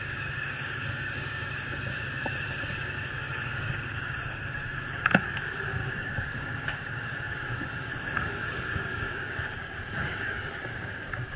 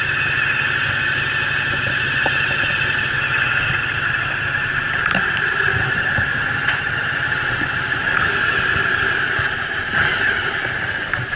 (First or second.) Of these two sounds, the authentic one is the second